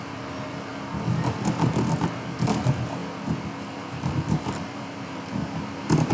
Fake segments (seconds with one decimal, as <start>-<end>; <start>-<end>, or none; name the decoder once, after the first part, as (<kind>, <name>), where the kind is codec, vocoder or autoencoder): 0.0-0.7 (vocoder, BigVGAN v2); 2.0-3.0; 3.7-5.4